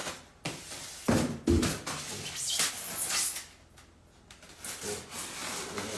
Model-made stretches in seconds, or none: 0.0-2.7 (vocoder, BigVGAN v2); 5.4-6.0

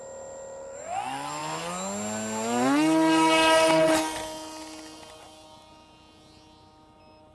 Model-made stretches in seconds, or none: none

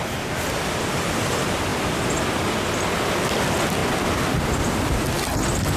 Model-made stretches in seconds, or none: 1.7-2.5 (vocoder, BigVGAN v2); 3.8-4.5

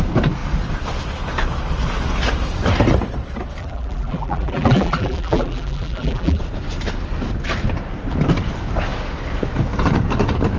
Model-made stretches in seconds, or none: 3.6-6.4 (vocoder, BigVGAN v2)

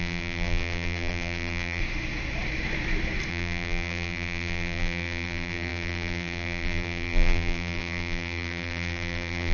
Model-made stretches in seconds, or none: 0.0-1.8 (vocoder, BigVGAN v2); 3.3-9.5